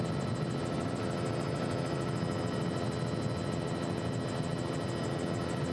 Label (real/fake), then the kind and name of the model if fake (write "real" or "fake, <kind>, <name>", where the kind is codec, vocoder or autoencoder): real